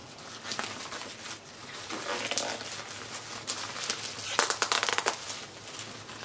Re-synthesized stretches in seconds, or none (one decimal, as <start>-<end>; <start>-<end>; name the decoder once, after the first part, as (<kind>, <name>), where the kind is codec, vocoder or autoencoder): none